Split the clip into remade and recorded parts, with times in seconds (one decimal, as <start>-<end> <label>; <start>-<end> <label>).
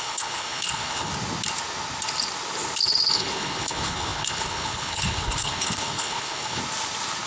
0.0-1.1 remade; 1.1-3.1 recorded; 3.1-6.6 remade; 6.6-7.3 recorded